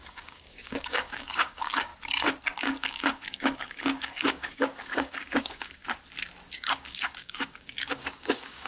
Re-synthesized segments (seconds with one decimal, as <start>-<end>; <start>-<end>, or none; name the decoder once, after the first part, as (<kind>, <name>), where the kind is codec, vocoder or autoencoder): 0.0-1.9 (codec, DAC); 2.6-5.8; 6.5-8.7

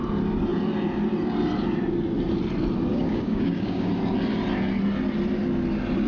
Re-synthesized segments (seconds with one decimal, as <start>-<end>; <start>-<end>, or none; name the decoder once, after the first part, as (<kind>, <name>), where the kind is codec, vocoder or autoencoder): 2.9-3.9 (codec, DAC)